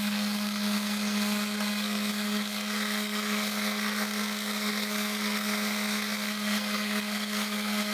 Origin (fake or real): fake